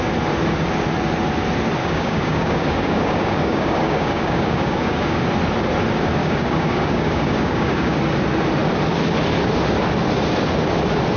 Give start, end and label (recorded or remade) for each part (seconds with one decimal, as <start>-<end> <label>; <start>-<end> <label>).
0.0-1.8 recorded; 1.8-5.2 remade; 5.2-6.2 recorded; 6.2-8.0 remade; 8.0-11.2 recorded